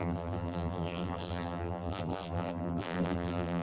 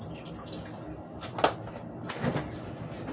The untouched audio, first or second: second